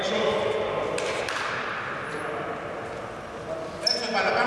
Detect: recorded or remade recorded